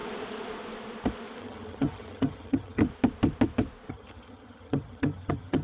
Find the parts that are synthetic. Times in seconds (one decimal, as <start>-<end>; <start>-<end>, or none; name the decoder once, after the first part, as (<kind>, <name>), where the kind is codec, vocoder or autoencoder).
1.4-2.8 (vocoder, HiFi-GAN); 3.9-5.6